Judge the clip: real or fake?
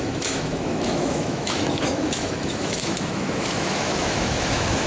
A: fake